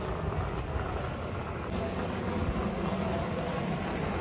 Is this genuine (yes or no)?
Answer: yes